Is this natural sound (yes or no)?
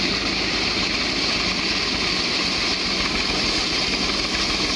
yes